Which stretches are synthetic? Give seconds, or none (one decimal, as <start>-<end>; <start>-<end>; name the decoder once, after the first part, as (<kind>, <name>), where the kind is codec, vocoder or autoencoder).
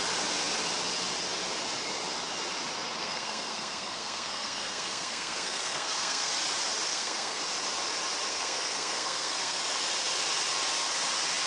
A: 3.0-6.3 (codec, SNAC); 6.9-7.4; 8.3-9.6